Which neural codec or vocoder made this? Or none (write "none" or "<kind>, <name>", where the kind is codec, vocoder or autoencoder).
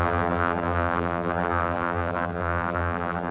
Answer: vocoder, BigVGAN v2